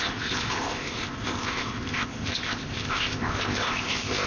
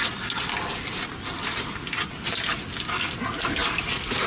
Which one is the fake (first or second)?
first